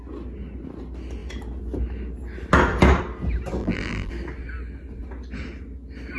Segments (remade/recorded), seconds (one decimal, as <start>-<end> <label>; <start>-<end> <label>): 0.0-3.6 recorded; 3.6-4.1 remade; 4.1-6.2 recorded